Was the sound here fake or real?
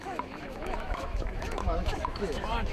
fake